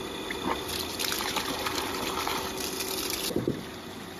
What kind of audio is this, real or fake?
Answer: real